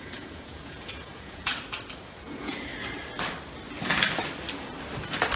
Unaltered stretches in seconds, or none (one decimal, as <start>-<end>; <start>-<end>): 1.5-2.0; 2.7-5.4